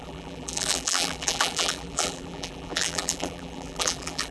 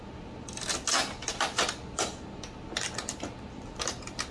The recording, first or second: second